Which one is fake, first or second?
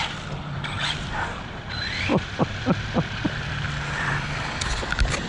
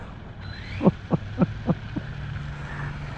first